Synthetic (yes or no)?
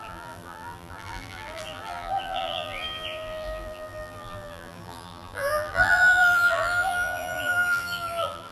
yes